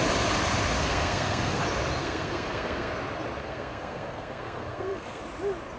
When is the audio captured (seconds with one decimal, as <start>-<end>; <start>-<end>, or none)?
0.0-0.8; 1.6-2.0; 2.9-3.4; 5.2-5.8